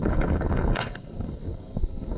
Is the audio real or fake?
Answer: fake